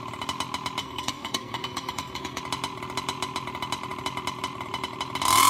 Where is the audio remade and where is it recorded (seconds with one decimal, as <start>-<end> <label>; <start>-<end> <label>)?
0.0-0.8 recorded; 0.8-2.4 remade; 2.4-5.5 recorded